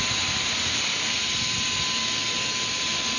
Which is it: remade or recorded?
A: recorded